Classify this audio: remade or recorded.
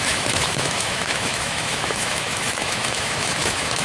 remade